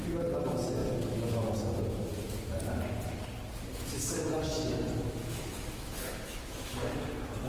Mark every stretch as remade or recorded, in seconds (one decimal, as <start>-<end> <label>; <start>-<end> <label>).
0.0-4.5 recorded; 4.5-6.7 remade; 6.7-7.5 recorded